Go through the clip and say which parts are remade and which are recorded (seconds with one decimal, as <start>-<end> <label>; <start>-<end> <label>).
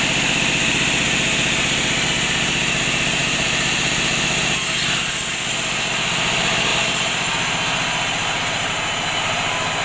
0.0-9.8 recorded